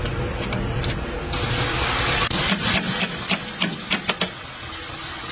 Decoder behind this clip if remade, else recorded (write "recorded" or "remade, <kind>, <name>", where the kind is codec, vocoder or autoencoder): recorded